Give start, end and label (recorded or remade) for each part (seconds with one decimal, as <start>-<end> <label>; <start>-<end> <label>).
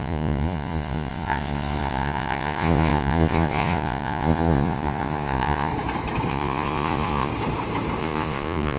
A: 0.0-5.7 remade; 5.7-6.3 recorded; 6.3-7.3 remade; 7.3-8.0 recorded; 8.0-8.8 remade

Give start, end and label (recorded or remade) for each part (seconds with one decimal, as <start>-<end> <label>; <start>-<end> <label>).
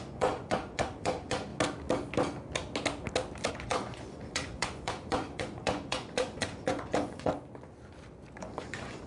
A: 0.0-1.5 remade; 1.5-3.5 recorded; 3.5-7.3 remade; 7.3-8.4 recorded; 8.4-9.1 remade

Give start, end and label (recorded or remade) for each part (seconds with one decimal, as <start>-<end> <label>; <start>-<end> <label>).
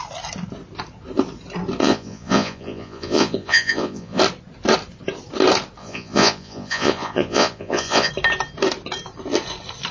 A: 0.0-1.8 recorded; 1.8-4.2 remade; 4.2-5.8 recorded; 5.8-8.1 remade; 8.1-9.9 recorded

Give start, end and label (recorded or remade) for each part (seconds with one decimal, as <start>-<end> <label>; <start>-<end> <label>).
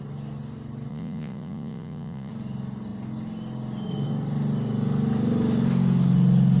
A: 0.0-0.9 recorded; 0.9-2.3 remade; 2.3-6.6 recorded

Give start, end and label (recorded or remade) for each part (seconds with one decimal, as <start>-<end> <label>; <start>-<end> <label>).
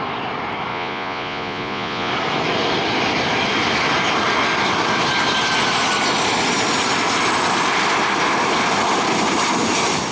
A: 0.0-0.7 recorded; 0.7-2.1 remade; 2.1-10.1 recorded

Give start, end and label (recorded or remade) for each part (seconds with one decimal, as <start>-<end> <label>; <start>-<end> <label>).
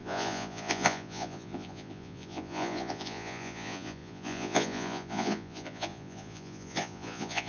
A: 0.0-7.5 remade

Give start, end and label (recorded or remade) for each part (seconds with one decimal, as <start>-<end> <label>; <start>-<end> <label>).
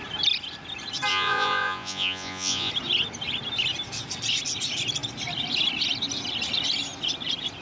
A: 0.0-1.1 recorded; 1.1-2.7 remade; 2.7-7.6 recorded